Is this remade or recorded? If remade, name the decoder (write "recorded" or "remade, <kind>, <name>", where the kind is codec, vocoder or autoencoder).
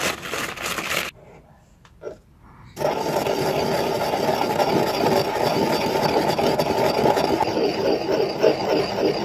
recorded